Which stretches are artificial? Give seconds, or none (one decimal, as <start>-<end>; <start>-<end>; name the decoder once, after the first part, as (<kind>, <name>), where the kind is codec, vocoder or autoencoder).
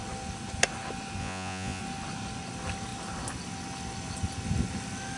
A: 1.2-1.8 (vocoder, Vocos)